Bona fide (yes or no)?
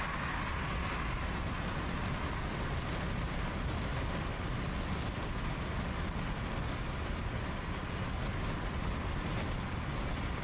yes